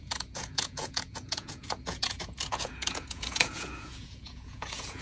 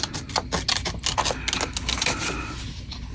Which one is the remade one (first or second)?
first